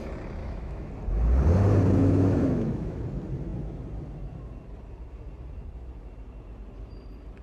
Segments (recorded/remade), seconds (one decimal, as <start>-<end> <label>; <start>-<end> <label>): 0.0-0.4 recorded; 0.4-0.9 remade; 0.9-2.0 recorded; 2.0-3.0 remade; 3.0-7.4 recorded